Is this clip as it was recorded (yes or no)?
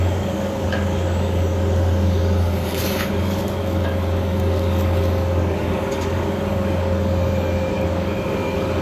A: no